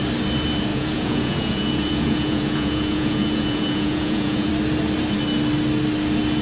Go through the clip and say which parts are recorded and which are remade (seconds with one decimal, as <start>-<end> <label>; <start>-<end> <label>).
0.0-0.7 recorded; 0.7-4.5 remade; 4.5-6.4 recorded